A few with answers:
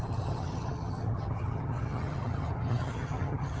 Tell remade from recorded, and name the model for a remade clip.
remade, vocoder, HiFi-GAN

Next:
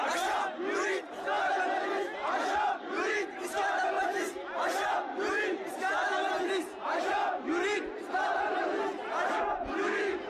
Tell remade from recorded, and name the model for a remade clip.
recorded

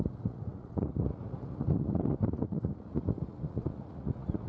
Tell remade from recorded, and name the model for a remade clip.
remade, vocoder, Vocos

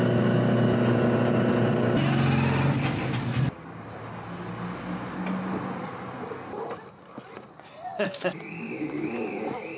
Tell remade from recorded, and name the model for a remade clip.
recorded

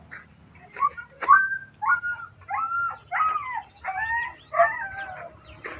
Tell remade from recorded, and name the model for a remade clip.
recorded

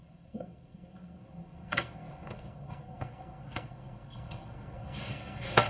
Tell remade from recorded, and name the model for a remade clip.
remade, codec, SNAC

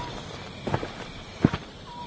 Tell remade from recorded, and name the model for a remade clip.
recorded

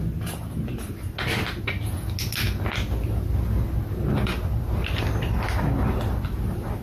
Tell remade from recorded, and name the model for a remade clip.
recorded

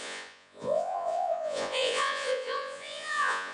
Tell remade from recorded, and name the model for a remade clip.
remade, vocoder, Vocos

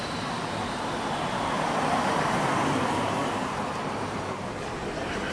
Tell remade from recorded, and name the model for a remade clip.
remade, vocoder, BigVGAN v2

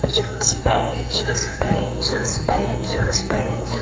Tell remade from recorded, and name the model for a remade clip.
remade, codec, SNAC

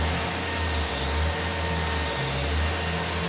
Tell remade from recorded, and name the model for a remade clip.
recorded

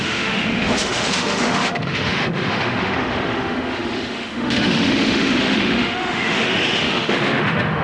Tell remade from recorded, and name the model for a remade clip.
remade, autoencoder, DAC-VAE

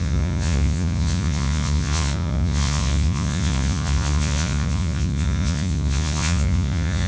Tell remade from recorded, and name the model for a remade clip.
remade, vocoder, Vocos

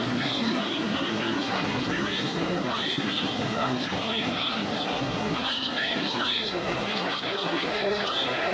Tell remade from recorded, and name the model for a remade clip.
remade, codec, SNAC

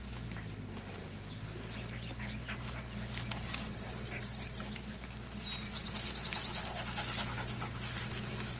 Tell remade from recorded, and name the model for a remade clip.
recorded